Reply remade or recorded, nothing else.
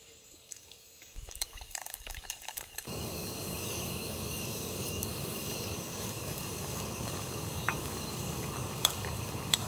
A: remade